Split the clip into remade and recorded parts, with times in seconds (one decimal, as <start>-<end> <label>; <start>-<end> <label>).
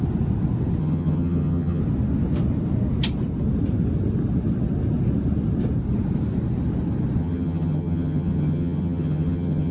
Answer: 0.0-0.8 recorded; 0.8-1.8 remade; 1.8-7.2 recorded; 7.2-9.7 remade